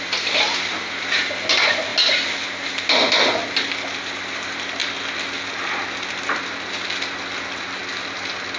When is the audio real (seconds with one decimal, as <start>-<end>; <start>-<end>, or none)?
0.0-8.6

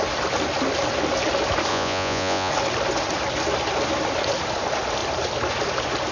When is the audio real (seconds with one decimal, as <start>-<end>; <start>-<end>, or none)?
0.0-1.7; 2.5-6.1

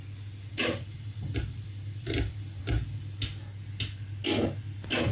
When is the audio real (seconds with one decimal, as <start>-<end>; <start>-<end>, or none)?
0.0-0.6; 2.6-5.1

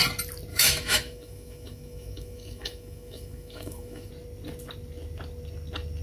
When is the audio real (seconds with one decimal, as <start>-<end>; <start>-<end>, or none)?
0.0-0.5; 4.1-6.0

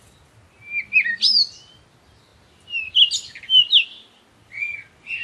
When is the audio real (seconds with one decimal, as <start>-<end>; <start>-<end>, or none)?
0.0-5.2